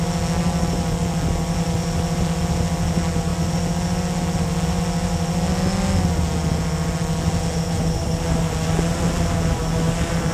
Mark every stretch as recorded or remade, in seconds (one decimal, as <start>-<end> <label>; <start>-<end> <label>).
0.0-10.3 recorded